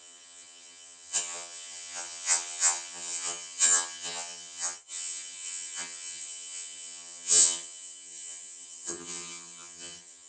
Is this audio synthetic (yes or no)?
yes